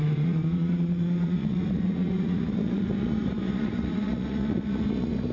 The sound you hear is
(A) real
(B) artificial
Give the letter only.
B